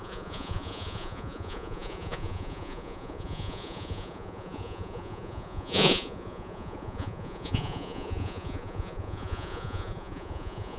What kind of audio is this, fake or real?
fake